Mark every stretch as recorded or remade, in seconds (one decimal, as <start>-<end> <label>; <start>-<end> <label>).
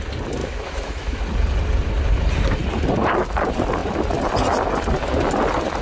0.0-0.4 recorded; 0.4-1.2 remade; 1.2-5.8 recorded